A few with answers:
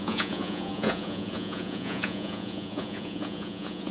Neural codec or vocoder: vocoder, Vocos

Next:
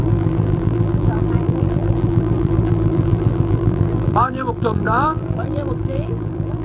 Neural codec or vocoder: vocoder, BigVGAN v2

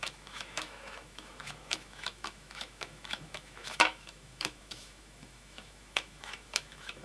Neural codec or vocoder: autoencoder, DAC-VAE